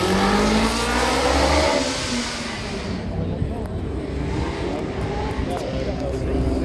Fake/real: real